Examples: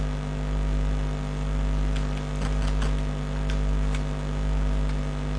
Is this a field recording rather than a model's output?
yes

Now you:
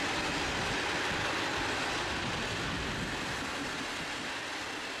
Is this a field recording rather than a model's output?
yes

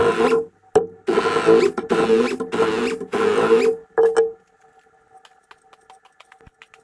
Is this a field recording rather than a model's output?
yes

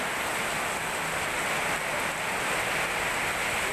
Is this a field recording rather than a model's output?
yes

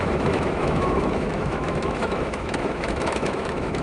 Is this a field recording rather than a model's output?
no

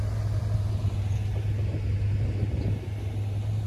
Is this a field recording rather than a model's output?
yes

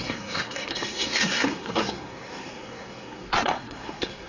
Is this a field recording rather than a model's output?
no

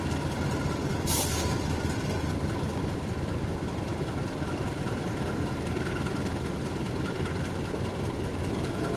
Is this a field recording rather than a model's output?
yes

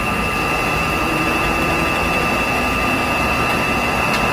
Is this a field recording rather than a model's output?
no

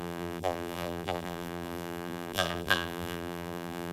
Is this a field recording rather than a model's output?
no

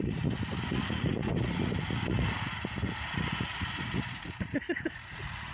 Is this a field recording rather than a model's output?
no